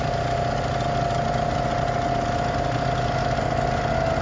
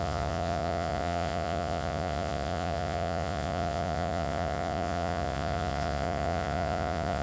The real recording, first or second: first